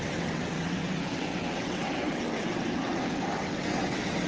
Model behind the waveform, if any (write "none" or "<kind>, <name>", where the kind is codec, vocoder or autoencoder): vocoder, WaveNeXt